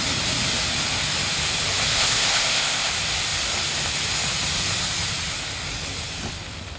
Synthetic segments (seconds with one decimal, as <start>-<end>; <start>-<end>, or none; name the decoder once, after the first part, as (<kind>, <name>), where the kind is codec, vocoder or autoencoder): 1.9-2.9 (codec, ZipCodec)